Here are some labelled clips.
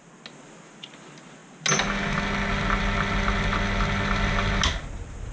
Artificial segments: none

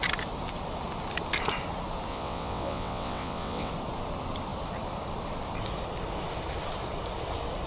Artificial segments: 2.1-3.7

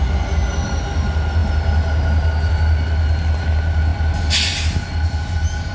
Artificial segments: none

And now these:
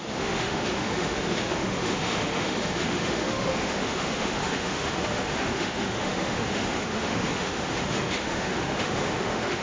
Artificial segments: 0.0-9.6

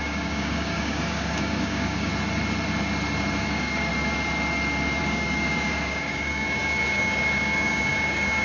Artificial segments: 0.0-2.1; 3.4-3.9; 5.0-8.4